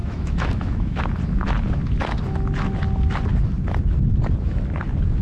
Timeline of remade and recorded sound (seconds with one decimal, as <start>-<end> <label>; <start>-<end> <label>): 0.0-1.0 remade; 1.0-5.2 recorded